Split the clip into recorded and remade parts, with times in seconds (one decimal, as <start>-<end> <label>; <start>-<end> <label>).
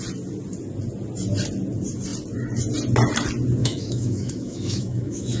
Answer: 0.0-3.6 recorded; 3.6-5.4 remade